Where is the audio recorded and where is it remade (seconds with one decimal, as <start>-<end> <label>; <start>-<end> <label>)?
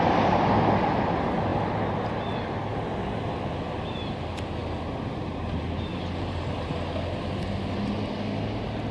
0.0-8.9 recorded